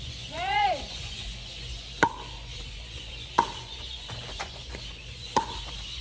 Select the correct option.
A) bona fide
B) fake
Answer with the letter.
B